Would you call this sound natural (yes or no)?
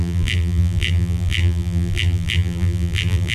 no